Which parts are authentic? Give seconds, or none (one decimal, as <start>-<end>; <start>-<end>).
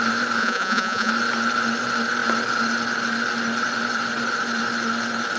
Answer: 0.0-0.4; 1.1-5.4